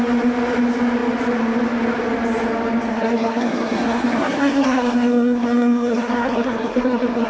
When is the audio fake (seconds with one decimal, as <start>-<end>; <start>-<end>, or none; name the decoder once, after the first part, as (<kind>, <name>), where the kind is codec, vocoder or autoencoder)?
2.9-7.3 (codec, SNAC)